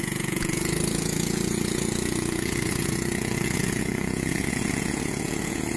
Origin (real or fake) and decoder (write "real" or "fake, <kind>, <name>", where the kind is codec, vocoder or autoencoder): fake, vocoder, Vocos